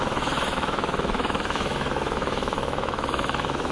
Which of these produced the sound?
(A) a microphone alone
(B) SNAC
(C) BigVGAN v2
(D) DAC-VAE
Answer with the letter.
D